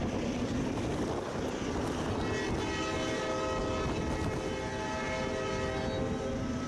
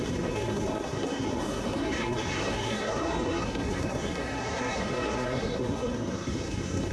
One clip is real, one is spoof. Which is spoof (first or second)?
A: second